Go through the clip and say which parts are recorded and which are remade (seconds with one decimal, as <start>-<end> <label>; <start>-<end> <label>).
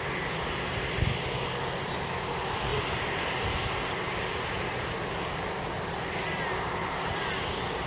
0.0-7.9 recorded